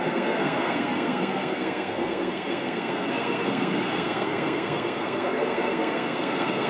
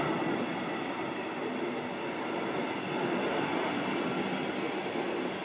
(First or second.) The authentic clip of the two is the second